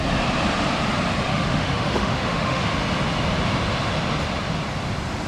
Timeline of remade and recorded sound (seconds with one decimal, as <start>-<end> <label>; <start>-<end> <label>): 0.0-1.3 recorded; 1.3-2.6 remade; 2.6-5.3 recorded